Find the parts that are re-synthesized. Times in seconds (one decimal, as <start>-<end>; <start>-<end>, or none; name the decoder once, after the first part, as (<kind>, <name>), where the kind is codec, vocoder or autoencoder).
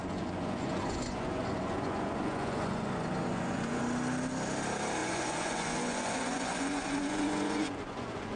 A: 0.0-3.8 (vocoder, Vocos); 5.0-8.4